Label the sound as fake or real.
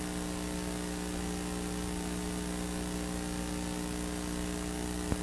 real